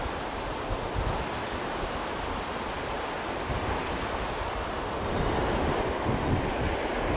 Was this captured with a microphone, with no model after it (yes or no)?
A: yes